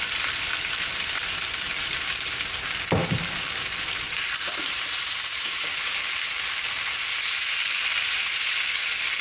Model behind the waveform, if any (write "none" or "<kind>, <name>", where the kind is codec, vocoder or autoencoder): vocoder, BigVGAN v2